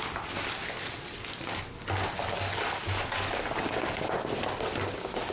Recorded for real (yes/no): yes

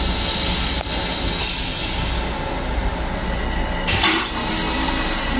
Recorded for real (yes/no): yes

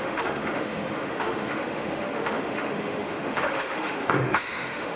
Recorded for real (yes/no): no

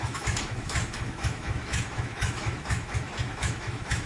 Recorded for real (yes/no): no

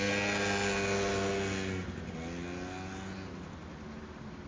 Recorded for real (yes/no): yes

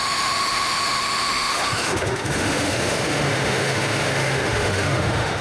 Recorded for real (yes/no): no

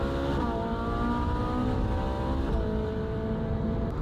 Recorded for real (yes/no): yes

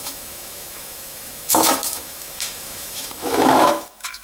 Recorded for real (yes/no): no